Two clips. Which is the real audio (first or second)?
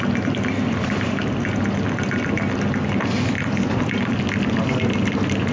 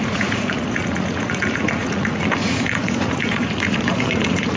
first